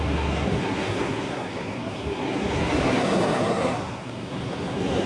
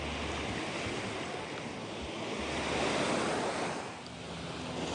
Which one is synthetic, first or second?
first